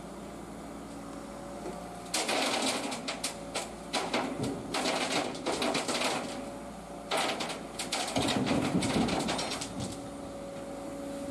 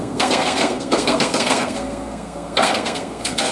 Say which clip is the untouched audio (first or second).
first